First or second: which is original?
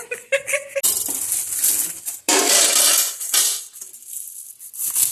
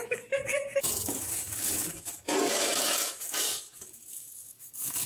first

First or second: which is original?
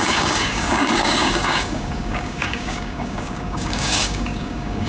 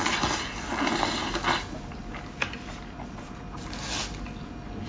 second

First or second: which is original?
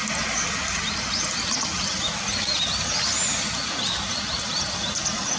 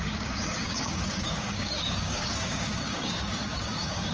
first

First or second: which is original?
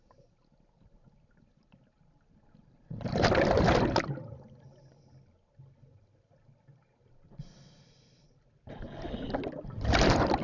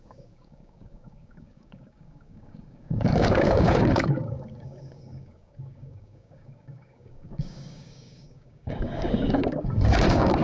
first